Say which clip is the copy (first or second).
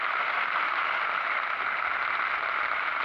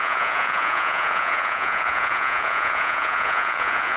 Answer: second